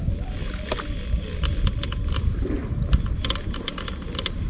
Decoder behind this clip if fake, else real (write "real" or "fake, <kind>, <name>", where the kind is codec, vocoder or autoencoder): real